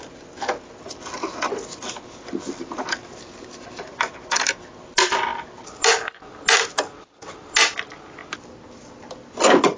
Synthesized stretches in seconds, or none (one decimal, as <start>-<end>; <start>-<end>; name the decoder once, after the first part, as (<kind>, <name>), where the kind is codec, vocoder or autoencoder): none